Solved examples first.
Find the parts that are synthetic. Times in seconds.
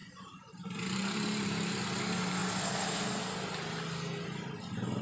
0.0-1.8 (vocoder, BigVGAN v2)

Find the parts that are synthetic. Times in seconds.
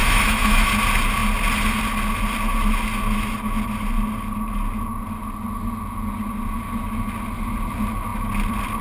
0.0-0.7 (autoencoder, DAC-VAE)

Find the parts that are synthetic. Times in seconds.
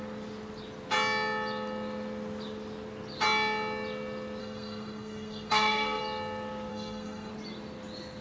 4.4-6.0 (codec, SNAC); 6.7-7.3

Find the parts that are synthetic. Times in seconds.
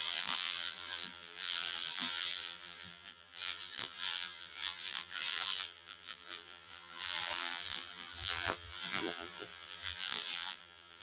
0.0-11.0 (vocoder, BigVGAN v2)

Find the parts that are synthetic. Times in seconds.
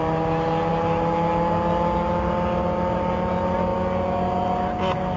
none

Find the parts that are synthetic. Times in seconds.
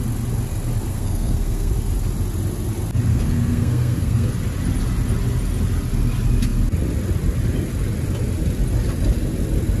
0.9-1.7 (codec, SNAC); 3.1-4.3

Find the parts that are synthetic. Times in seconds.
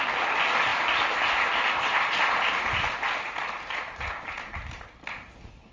none